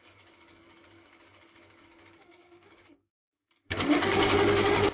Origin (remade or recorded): remade